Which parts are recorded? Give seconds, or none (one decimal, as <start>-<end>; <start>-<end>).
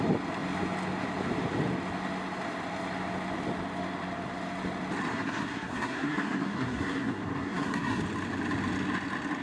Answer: 0.0-5.1; 8.0-9.4